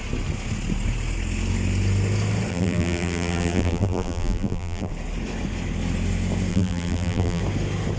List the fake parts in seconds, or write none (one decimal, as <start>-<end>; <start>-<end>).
2.5-4.9; 6.5-7.4